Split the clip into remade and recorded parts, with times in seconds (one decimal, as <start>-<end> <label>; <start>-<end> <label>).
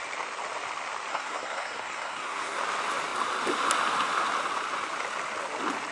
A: 0.0-1.1 recorded; 1.1-2.6 remade; 2.6-5.9 recorded